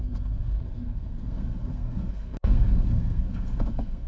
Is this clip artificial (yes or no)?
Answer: yes